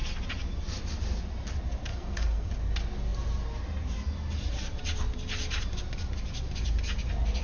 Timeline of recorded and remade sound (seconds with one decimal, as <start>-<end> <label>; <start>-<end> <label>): 0.0-1.9 recorded; 1.9-2.5 remade; 2.5-7.4 recorded